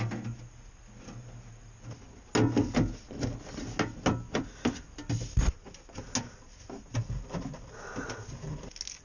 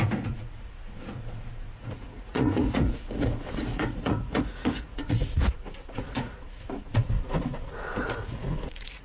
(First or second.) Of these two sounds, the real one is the first